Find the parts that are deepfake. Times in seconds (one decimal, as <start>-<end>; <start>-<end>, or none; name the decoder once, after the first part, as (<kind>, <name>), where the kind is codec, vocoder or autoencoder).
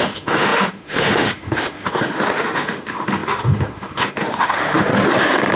0.0-4.9 (autoencoder, DAC-VAE)